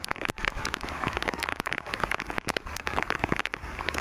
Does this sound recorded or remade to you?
remade